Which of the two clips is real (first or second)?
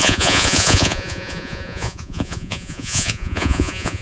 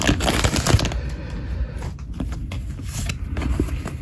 second